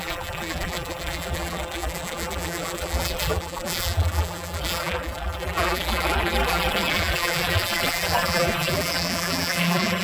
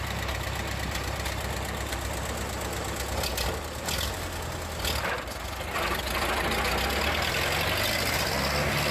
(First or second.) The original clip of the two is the second